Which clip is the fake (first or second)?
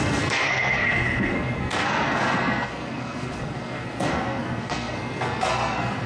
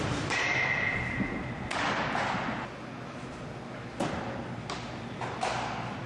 first